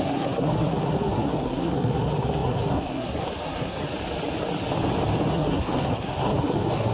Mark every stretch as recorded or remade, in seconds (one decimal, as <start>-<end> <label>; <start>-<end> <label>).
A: 0.0-3.8 remade; 3.8-5.3 recorded; 5.3-6.9 remade